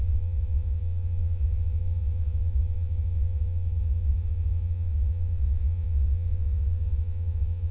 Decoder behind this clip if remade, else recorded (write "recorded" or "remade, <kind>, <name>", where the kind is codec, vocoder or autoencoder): remade, vocoder, Vocos